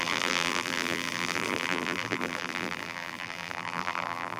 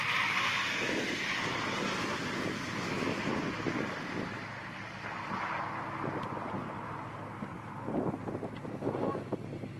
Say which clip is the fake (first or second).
first